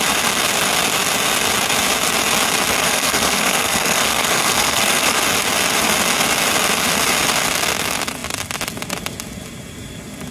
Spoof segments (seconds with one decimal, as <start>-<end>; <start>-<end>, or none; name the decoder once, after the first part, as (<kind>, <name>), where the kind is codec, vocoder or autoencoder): 2.8-5.2 (codec, SNAC)

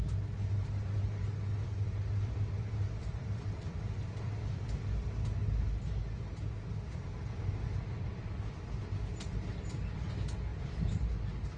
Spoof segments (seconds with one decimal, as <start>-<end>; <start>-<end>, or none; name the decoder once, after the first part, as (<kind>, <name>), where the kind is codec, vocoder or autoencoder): 1.6-4.8 (vocoder, BigVGAN v2); 10.5-11.1

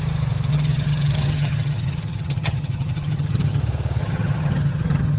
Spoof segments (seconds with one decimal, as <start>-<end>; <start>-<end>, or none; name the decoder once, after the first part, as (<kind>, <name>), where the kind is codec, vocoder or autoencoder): 0.5-3.6 (vocoder, HiFi-GAN); 4.0-5.2

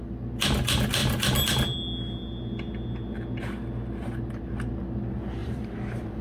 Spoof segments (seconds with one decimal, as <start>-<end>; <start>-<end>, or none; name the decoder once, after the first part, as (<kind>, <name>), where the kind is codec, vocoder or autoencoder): 5.4-6.2 (vocoder, BigVGAN v2)

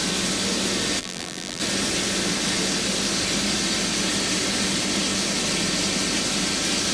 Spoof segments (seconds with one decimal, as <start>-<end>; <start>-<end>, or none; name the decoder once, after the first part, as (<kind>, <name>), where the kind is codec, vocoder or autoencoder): 1.0-1.6 (vocoder, BigVGAN v2)

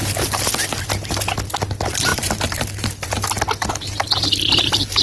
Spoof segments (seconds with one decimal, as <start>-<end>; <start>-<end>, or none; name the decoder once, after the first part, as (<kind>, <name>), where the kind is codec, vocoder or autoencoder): 2.1-2.6 (vocoder, BigVGAN v2)

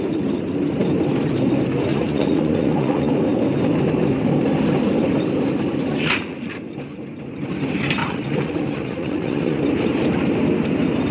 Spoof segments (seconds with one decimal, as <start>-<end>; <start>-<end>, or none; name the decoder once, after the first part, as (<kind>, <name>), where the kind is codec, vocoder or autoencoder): 1.9-3.1 (vocoder, Vocos); 5.9-6.5; 8.0-9.6